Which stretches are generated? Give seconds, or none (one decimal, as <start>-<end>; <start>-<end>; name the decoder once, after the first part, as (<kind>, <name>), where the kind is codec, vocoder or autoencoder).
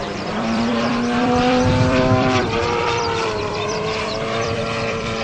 0.0-5.2 (vocoder, BigVGAN v2)